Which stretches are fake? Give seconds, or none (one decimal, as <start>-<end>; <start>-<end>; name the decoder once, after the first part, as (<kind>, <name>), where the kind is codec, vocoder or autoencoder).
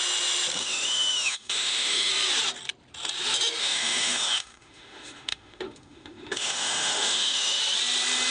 0.6-2.1 (autoencoder, DAC-VAE); 3.6-7.6